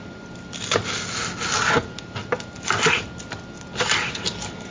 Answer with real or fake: real